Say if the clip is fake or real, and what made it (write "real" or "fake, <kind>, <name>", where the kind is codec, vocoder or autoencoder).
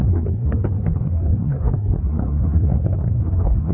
fake, codec, SNAC